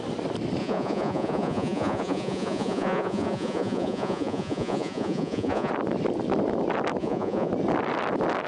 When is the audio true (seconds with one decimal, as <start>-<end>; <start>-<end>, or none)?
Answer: 0.0-0.6; 5.7-7.0; 7.5-8.5

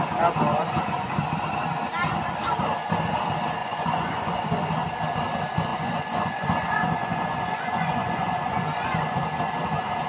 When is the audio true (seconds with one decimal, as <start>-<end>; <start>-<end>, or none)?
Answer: 0.0-0.5; 1.1-3.6; 4.7-5.7; 9.2-10.1

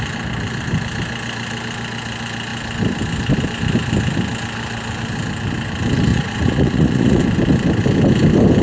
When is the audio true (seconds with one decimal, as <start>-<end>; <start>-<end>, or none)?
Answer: 0.0-6.1; 7.2-8.6

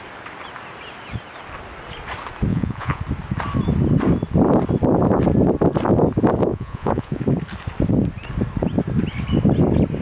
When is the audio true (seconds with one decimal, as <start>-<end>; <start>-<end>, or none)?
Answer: 0.0-2.5; 3.0-6.5; 7.2-10.0

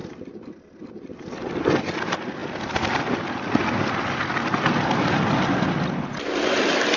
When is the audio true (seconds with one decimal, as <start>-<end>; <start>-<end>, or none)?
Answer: 0.0-7.0

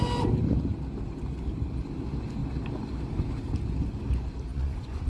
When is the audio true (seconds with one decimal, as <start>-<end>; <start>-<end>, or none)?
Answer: 0.0-4.5

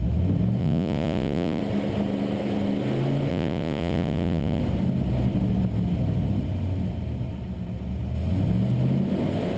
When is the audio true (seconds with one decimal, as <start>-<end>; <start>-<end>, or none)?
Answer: 0.0-0.6; 1.6-3.3; 4.6-9.6

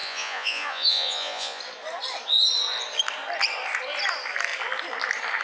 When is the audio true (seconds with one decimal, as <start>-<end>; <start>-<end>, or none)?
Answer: 1.6-5.4